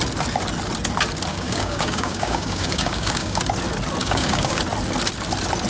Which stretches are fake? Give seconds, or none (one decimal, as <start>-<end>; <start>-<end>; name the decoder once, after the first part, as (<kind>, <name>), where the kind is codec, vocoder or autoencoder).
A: 1.3-3.4 (codec, DAC); 4.0-4.6